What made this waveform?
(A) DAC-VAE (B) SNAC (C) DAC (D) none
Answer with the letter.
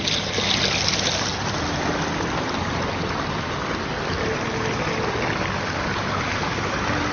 D